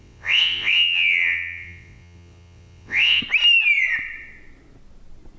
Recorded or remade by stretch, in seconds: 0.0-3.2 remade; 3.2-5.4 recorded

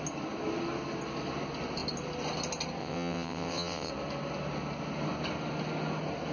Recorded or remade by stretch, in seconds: 0.0-2.8 recorded; 2.8-3.9 remade; 3.9-6.3 recorded

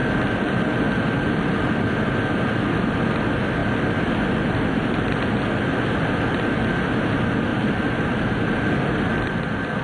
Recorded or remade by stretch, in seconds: 0.0-9.8 recorded

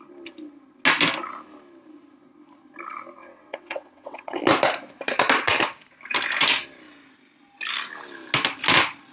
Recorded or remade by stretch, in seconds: 0.0-3.2 recorded; 3.2-4.4 remade; 4.4-9.1 recorded

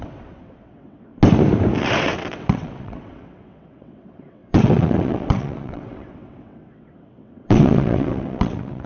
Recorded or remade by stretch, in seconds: 0.0-1.1 remade; 1.1-1.8 recorded; 1.8-8.9 remade

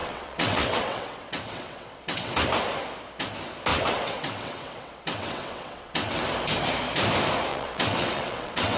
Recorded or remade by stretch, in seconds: 0.0-2.3 remade; 2.3-3.7 recorded; 3.7-6.2 remade; 6.2-7.5 recorded; 7.5-8.8 remade

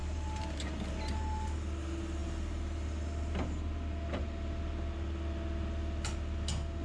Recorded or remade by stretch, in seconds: 0.0-6.8 recorded

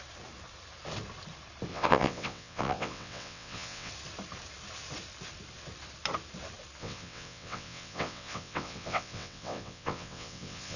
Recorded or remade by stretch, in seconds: 0.0-1.7 recorded; 1.7-3.9 remade; 3.9-6.8 recorded; 6.8-10.8 remade